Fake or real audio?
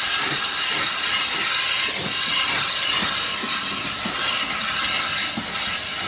real